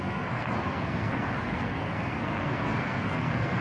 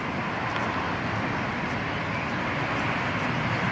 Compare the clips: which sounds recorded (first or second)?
second